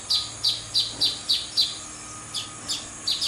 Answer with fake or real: real